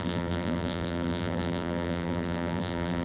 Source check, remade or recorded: remade